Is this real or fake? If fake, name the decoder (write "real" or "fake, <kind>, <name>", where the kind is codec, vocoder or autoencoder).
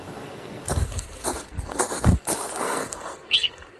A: fake, codec, SNAC